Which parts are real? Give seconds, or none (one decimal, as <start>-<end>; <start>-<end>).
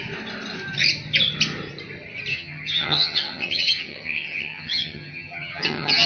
0.0-2.3